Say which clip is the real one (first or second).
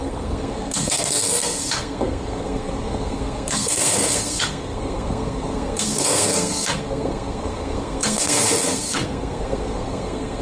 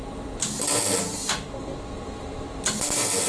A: second